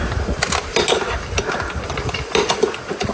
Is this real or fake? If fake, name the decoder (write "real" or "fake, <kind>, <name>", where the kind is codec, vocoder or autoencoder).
real